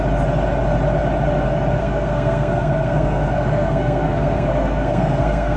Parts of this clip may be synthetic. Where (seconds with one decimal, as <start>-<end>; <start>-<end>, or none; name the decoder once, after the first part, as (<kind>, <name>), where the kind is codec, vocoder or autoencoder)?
1.8-5.6 (codec, SNAC)